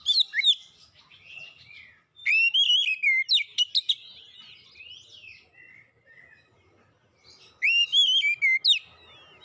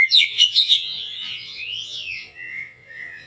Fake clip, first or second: second